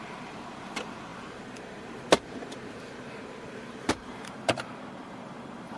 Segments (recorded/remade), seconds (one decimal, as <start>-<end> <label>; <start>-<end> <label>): 0.0-5.8 remade